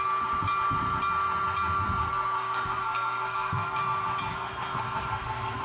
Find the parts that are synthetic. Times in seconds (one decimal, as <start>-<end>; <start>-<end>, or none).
2.0-3.8; 4.3-5.6